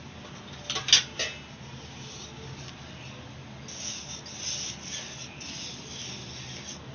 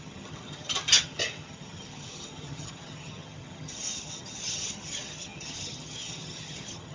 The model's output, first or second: second